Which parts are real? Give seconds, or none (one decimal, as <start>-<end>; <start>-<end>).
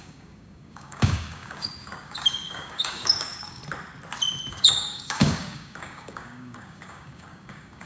3.6-4.5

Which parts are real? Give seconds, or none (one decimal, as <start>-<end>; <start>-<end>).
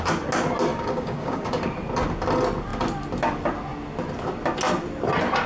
0.0-0.7; 1.6-5.5